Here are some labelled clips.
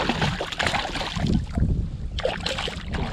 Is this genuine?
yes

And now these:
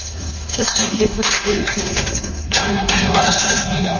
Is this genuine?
no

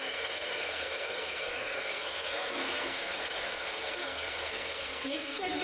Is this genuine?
no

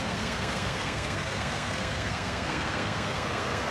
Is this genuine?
no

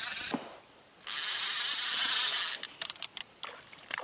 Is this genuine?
yes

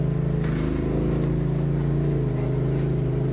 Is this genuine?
yes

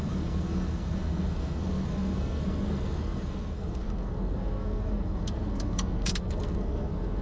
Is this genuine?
no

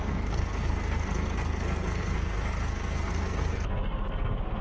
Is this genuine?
no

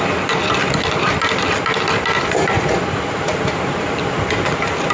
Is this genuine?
yes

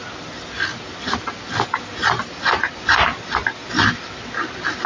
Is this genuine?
yes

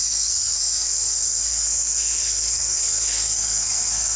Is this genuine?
no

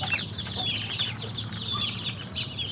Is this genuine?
yes